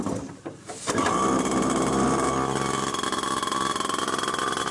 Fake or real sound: real